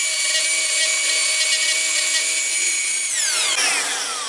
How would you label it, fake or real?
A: real